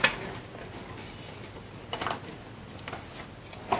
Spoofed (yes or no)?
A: no